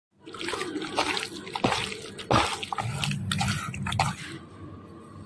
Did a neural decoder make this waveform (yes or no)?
no